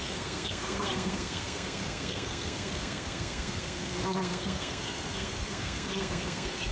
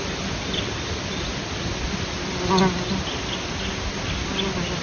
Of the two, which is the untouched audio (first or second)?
second